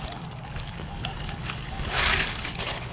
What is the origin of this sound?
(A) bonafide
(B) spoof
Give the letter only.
B